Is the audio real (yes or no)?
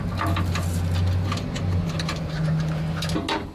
yes